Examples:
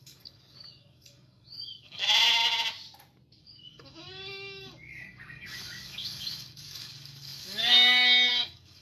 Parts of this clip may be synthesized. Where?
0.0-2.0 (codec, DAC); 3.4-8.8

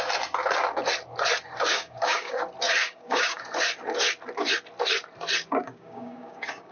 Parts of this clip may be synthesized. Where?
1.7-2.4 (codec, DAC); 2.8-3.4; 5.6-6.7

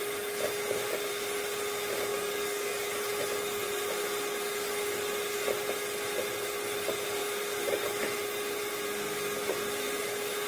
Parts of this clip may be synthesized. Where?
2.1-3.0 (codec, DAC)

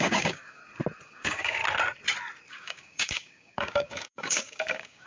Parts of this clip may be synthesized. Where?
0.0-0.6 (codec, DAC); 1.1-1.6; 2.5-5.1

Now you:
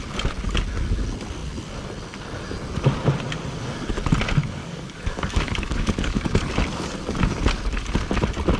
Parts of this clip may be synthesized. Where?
4.6-6.5 (codec, DAC)

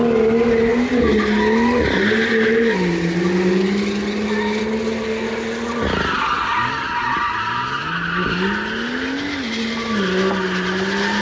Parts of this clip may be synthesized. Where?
none

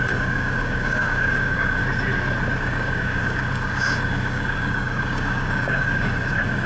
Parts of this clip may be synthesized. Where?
0.0-1.8 (codec, DAC); 2.6-6.7